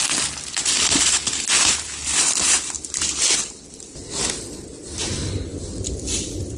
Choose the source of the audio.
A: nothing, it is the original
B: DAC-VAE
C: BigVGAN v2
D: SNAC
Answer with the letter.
A